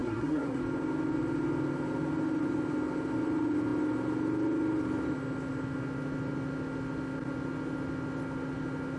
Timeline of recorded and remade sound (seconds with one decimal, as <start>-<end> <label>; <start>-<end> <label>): 0.0-0.6 remade; 0.6-9.0 recorded